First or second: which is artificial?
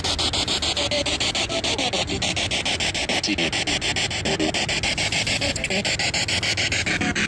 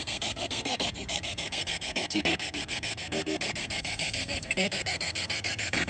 second